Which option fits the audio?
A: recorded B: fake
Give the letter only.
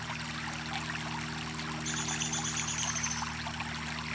A